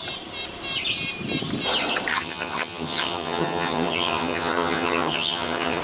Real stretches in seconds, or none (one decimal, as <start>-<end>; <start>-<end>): 0.0-2.1